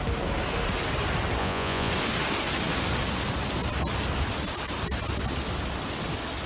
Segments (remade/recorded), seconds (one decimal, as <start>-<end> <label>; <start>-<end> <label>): 0.0-1.4 recorded; 1.4-1.9 remade; 1.9-6.5 recorded